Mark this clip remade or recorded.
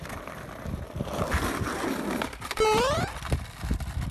remade